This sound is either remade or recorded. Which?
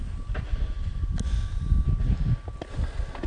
recorded